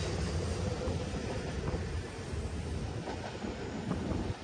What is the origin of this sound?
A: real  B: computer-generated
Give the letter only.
A